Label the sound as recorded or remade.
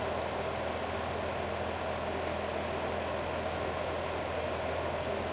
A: recorded